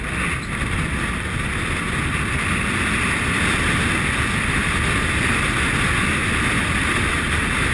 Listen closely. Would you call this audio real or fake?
real